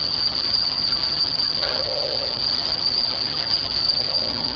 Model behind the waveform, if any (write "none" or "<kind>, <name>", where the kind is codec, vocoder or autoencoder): vocoder, HiFi-GAN